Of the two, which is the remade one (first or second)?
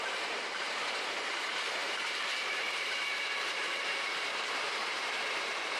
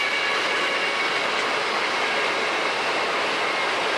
first